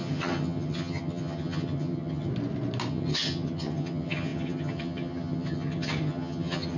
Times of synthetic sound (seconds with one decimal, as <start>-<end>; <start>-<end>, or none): 0.0-2.3; 2.9-6.8